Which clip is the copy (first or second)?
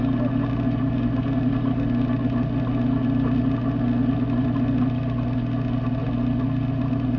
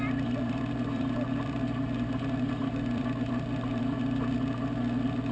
second